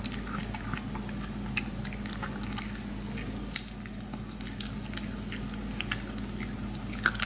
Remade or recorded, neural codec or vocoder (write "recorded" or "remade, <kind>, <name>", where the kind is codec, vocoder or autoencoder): recorded